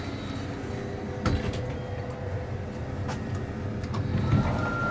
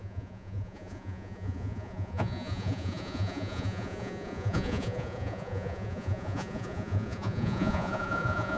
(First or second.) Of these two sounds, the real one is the first